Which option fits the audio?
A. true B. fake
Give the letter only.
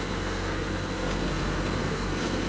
B